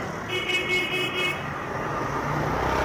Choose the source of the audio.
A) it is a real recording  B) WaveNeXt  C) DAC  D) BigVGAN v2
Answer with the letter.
A